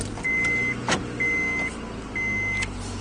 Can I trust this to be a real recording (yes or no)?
yes